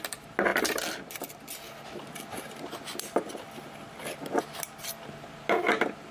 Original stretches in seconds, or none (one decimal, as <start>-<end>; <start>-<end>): 0.0-6.1